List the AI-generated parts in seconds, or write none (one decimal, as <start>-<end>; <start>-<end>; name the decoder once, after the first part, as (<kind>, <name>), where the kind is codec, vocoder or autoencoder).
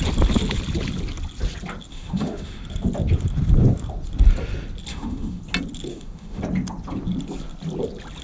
1.9-2.6 (autoencoder, DAC-VAE); 4.9-5.4; 5.9-6.4